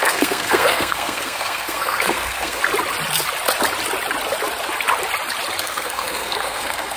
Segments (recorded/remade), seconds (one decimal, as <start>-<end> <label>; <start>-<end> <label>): 0.0-2.6 remade; 2.6-5.6 recorded; 5.6-7.0 remade